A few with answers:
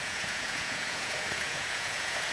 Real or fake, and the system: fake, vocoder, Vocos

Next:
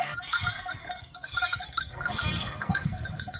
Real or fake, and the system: fake, codec, SNAC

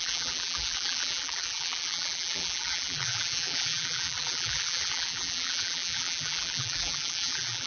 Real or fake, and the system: fake, vocoder, BigVGAN v2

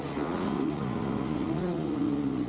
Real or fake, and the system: fake, vocoder, Vocos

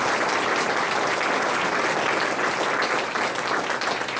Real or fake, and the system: real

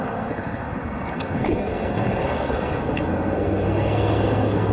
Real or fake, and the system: fake, codec, SNAC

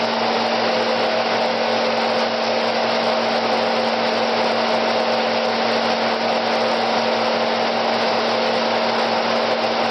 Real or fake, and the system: real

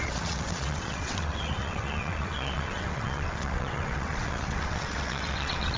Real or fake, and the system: fake, vocoder, WaveNeXt